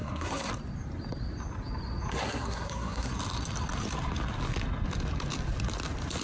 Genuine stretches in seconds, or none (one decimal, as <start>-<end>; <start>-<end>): 0.5-2.1; 3.1-6.2